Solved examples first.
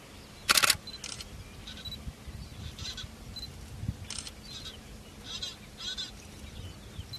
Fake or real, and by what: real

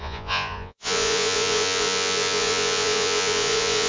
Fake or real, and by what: fake, vocoder, Vocos